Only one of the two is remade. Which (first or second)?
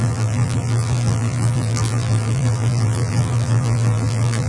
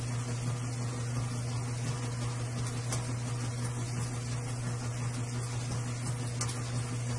first